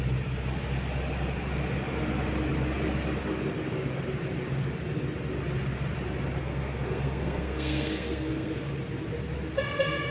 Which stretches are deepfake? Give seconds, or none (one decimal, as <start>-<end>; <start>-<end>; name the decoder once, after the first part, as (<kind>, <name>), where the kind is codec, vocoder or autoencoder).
6.4-8.6 (codec, SNAC)